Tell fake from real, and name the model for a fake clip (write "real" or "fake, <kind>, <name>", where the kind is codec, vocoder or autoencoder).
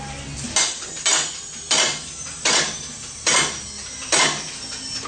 real